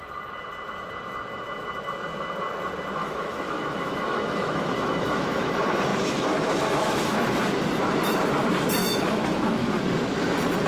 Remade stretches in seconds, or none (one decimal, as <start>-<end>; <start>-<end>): 3.0-5.5; 5.9-7.0; 8.8-9.8